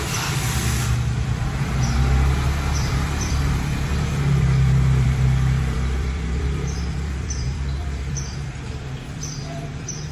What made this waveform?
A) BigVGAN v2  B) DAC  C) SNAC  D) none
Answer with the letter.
A